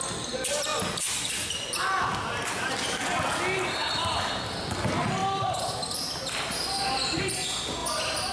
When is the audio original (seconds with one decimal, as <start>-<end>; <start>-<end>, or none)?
0.0-5.2; 7.2-8.3

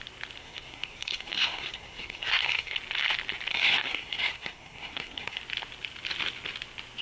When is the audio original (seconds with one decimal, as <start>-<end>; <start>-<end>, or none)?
0.0-0.4; 2.8-3.5; 5.4-7.0

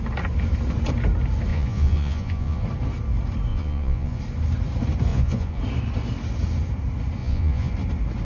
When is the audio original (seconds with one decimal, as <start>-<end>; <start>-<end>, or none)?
0.0-1.5; 2.6-3.5; 4.2-5.1; 5.6-7.2; 7.7-8.2

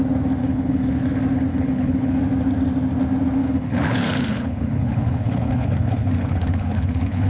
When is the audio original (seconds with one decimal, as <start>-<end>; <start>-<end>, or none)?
0.0-0.4; 0.9-1.5; 2.2-3.4

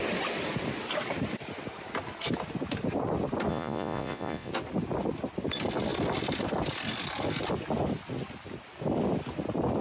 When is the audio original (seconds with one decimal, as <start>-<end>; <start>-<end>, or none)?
0.0-3.5; 4.5-9.8